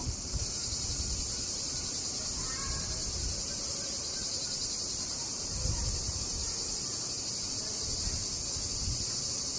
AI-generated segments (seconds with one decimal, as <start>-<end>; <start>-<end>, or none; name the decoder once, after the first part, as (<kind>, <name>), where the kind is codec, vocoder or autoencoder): 0.0-0.4 (vocoder, BigVGAN v2); 3.8-8.2